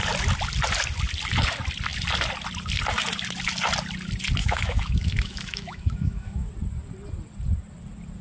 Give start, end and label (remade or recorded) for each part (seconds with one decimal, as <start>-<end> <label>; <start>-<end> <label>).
0.0-4.4 recorded; 4.4-6.5 remade; 6.5-8.2 recorded

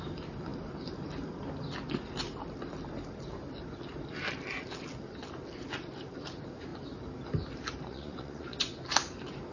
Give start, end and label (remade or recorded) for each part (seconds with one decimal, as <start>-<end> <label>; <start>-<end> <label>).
0.0-7.9 recorded; 7.9-8.7 remade; 8.7-9.5 recorded

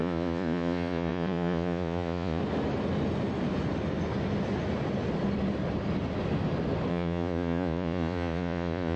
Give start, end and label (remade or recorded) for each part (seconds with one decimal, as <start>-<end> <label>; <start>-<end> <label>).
0.0-2.4 remade; 2.4-6.9 recorded; 6.9-9.0 remade

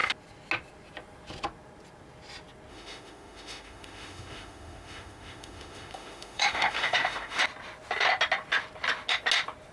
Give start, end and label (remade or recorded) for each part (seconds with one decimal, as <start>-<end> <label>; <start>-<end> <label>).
0.0-2.7 recorded; 2.7-7.4 remade; 7.4-9.7 recorded